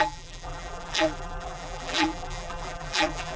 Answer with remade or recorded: remade